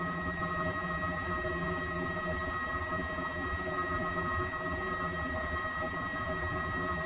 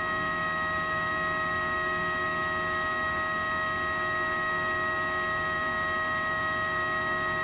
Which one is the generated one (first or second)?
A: first